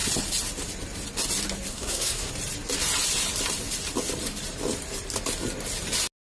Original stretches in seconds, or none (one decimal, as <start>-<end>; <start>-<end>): 0.0-1.7; 2.3-6.3